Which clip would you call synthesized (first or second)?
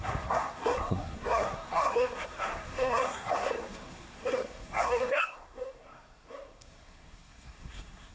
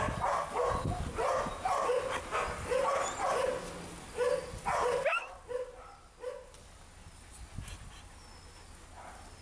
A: first